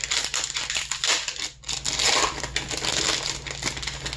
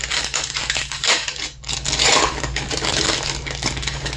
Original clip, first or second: first